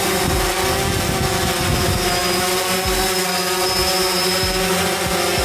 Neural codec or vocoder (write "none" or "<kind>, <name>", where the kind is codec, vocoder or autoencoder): none